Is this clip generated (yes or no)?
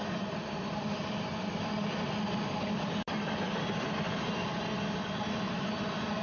no